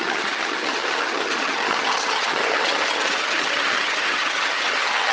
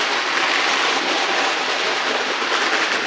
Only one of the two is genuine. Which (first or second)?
second